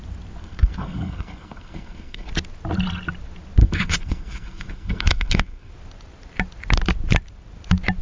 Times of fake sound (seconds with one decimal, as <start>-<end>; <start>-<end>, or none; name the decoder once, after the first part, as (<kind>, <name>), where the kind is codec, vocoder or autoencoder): 0.4-2.3 (codec, SNAC); 3.6-5.7

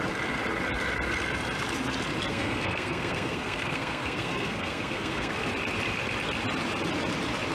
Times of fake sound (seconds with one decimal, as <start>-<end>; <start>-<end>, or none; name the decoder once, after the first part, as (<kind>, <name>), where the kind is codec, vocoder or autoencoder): 2.3-5.3 (codec, SNAC)

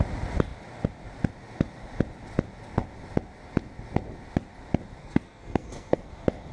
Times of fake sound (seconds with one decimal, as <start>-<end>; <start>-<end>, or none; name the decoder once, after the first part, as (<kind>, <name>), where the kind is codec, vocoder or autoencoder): 5.0-6.1 (codec, SNAC)

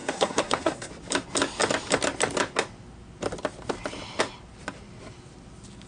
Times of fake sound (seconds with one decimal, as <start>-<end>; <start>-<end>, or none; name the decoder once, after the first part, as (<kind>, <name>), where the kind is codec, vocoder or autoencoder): 0.0-0.9 (codec, SNAC)